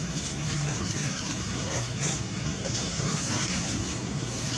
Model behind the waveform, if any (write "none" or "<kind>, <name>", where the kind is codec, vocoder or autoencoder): codec, SNAC